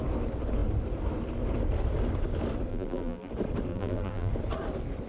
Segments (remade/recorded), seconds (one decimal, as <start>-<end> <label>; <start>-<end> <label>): 0.0-2.7 recorded; 2.7-3.3 remade; 3.3-3.7 recorded; 3.7-4.3 remade; 4.3-5.1 recorded